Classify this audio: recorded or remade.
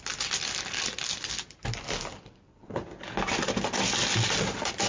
recorded